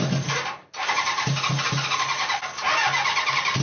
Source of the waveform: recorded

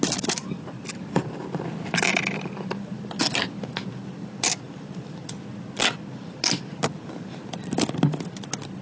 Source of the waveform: recorded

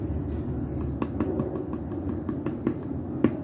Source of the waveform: recorded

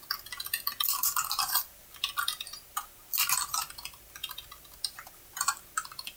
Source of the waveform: recorded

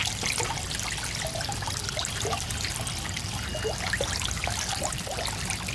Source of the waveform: recorded